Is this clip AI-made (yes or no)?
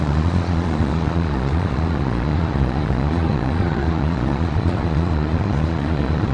yes